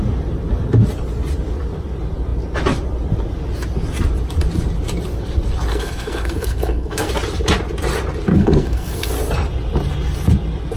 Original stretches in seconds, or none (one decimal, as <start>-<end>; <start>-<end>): 0.0-5.7; 7.1-8.3; 9.1-10.8